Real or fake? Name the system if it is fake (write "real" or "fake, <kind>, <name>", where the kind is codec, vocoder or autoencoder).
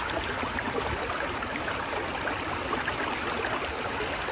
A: real